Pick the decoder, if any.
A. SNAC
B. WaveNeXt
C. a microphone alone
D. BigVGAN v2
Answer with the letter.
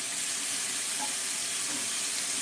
C